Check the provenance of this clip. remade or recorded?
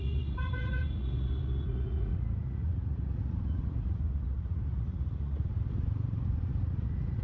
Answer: remade